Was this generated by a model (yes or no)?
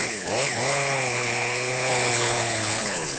yes